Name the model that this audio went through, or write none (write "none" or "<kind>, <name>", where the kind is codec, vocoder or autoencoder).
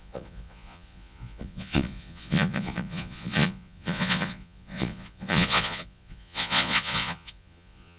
vocoder, Vocos